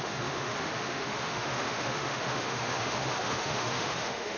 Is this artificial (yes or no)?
yes